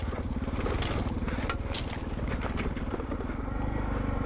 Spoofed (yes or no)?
no